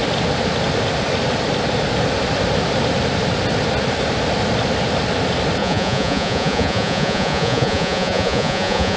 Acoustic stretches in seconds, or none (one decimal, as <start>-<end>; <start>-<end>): 0.0-5.6